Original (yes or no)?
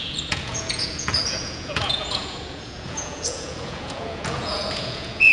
no